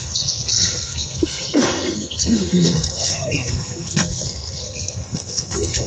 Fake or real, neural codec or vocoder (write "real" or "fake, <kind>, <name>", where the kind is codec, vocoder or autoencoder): fake, codec, SNAC